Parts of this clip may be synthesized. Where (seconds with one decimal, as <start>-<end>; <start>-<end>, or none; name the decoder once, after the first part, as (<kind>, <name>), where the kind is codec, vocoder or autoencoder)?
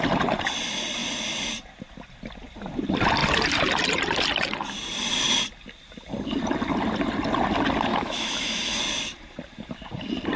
7.9-8.8 (autoencoder, DAC-VAE)